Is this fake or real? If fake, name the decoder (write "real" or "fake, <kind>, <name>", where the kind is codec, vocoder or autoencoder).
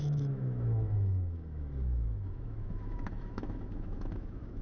fake, autoencoder, DAC-VAE